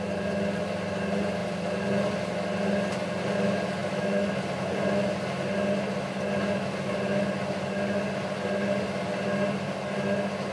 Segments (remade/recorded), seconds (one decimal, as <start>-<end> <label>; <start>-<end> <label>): 0.0-3.8 recorded; 3.8-4.3 remade; 4.3-10.5 recorded